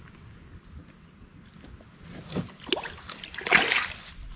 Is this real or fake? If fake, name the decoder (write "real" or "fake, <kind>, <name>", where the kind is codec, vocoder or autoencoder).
real